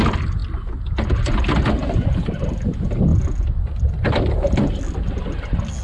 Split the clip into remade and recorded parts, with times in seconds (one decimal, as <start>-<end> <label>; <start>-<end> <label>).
0.0-5.8 recorded

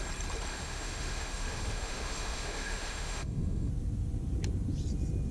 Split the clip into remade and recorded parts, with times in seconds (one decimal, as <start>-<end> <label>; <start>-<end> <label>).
0.0-0.5 recorded; 0.5-3.7 remade; 3.7-5.3 recorded